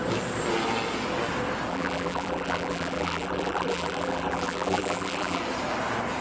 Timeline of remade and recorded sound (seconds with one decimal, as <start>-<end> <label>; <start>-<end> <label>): 0.0-1.7 recorded; 1.7-5.4 remade; 5.4-6.2 recorded